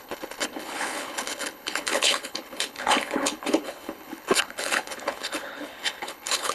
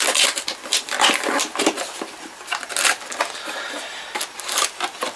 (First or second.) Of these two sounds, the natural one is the second